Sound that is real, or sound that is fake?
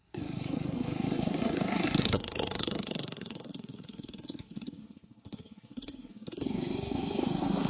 fake